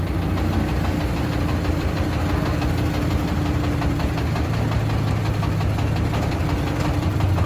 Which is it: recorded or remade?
recorded